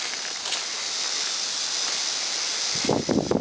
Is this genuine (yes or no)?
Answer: yes